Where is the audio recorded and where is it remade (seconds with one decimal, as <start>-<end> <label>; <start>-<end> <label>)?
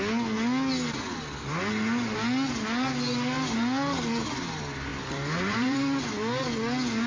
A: 0.0-4.9 recorded; 4.9-6.1 remade; 6.1-7.1 recorded